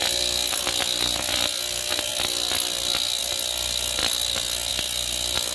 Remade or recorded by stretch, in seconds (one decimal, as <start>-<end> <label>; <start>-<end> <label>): 0.0-5.5 recorded